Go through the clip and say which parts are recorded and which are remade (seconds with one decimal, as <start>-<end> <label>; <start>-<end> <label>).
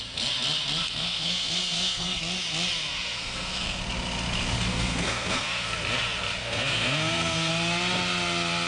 0.0-0.8 recorded; 0.8-2.2 remade; 2.2-2.9 recorded; 2.9-3.8 remade; 3.8-4.7 recorded; 4.7-5.7 remade; 5.7-6.4 recorded; 6.4-7.5 remade; 7.5-8.7 recorded